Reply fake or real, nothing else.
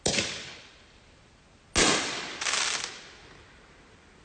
real